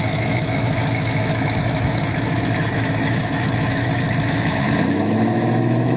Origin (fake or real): fake